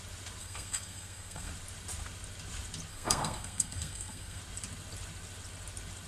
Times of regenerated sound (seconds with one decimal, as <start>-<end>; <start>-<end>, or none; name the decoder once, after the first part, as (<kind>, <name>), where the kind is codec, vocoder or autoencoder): 0.4-1.5 (codec, SNAC); 2.9-4.4